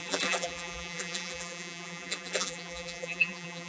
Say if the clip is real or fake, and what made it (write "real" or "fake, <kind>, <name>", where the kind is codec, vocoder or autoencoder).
fake, vocoder, BigVGAN v2